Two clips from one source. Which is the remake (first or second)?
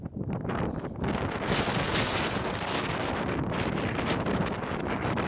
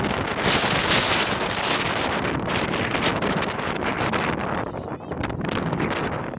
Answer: second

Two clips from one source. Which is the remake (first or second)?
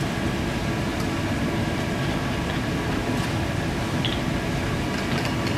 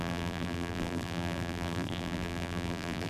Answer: second